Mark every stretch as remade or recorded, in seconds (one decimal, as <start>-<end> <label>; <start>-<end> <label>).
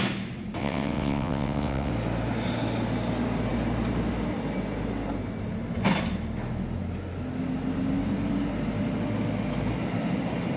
0.0-0.6 recorded; 0.6-1.9 remade; 1.9-10.6 recorded